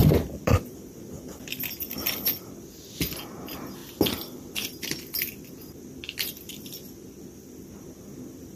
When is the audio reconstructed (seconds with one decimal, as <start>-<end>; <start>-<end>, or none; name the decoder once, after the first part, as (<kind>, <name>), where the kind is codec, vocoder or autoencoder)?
0.0-8.6 (vocoder, BigVGAN v2)